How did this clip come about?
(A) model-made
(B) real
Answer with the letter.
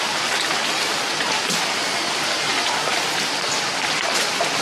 B